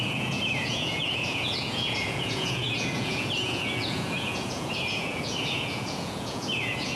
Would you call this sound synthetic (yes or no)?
yes